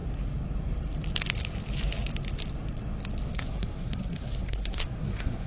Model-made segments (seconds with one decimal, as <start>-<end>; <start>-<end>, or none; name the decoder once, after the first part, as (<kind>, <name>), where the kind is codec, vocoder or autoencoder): 3.3-5.5 (codec, SNAC)